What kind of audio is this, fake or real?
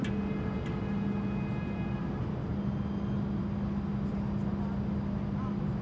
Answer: real